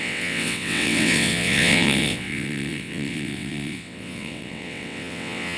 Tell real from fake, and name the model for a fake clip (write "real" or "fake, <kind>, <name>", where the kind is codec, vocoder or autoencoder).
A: fake, vocoder, WaveNeXt